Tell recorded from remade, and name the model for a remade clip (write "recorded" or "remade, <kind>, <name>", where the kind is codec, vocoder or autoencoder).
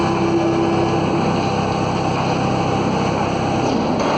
recorded